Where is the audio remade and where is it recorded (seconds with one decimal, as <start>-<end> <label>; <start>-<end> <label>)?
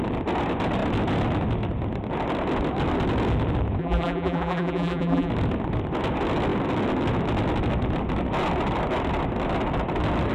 0.0-3.8 recorded; 3.8-5.3 remade; 5.3-10.3 recorded